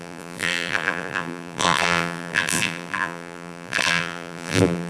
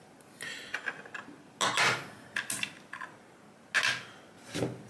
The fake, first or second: first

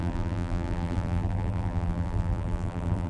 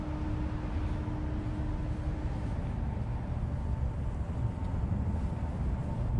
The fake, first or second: first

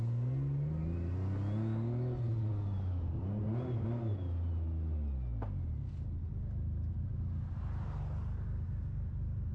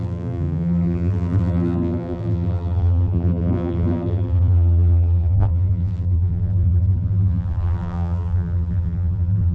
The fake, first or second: second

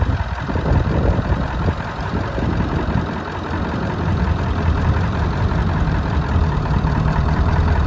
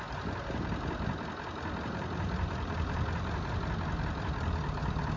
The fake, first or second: first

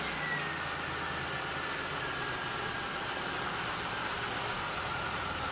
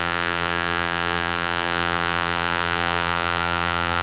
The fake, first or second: second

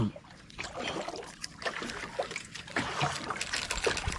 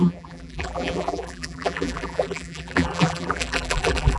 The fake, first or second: second